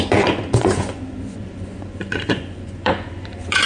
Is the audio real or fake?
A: fake